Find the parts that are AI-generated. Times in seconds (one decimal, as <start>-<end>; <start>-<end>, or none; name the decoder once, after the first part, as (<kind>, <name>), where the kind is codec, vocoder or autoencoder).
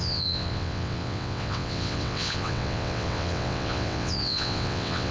0.0-5.1 (vocoder, WaveNeXt)